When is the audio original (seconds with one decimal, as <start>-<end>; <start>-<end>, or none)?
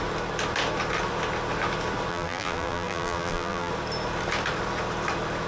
0.0-2.1; 3.7-5.5